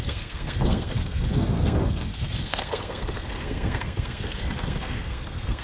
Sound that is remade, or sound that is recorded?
remade